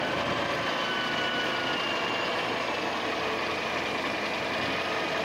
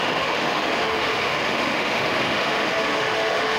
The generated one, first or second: second